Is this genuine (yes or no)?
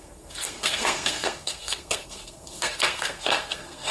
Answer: no